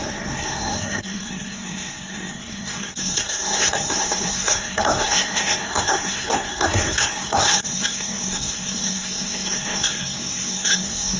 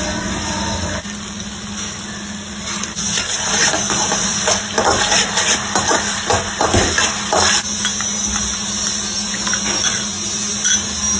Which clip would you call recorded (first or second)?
second